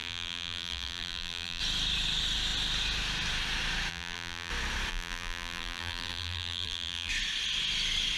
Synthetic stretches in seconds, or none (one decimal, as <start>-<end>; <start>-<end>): 0.0-1.6; 3.9-4.5; 4.9-7.1